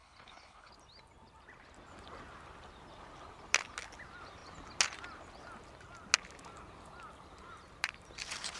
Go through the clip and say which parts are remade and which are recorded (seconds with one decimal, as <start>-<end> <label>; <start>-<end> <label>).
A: 0.0-0.7 remade; 0.7-8.6 recorded